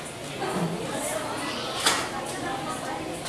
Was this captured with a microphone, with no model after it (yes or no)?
yes